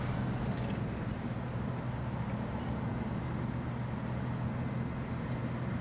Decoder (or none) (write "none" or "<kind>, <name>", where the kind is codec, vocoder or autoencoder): none